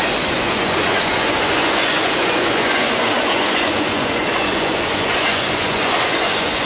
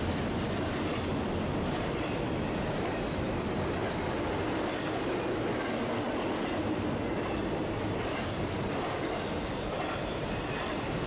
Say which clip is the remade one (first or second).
first